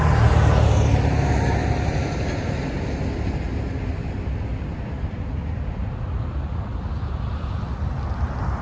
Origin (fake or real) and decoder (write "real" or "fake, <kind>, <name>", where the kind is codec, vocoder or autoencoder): real